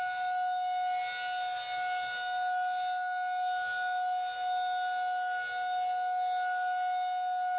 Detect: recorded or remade recorded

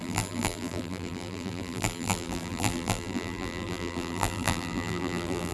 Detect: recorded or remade remade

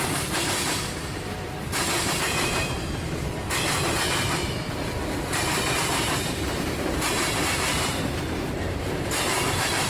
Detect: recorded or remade remade